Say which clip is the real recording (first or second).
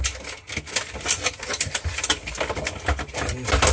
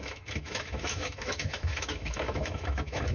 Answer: first